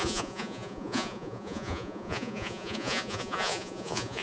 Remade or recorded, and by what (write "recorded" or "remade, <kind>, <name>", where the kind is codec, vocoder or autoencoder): remade, vocoder, Vocos